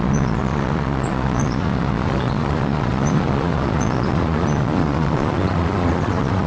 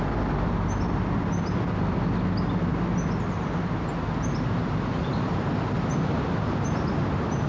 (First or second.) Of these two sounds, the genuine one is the second